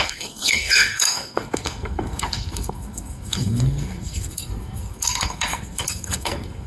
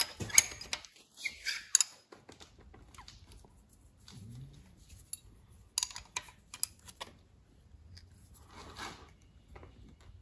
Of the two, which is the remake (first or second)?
first